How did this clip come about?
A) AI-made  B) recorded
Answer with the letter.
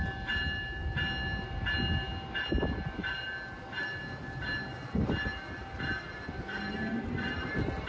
B